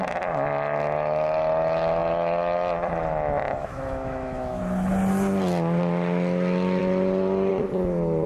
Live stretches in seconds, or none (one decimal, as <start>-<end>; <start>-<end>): 0.0-3.6; 4.6-8.3